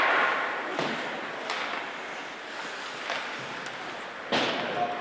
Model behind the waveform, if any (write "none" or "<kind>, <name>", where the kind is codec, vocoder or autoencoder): none